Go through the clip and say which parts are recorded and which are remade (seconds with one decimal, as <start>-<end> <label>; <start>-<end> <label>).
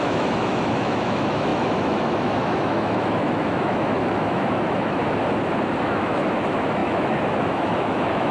0.0-5.0 remade; 5.0-5.8 recorded; 5.8-8.3 remade